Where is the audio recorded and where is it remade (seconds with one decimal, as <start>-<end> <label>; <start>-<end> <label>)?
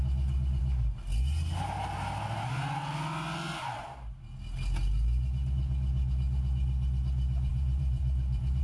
0.0-7.5 recorded; 7.5-8.6 remade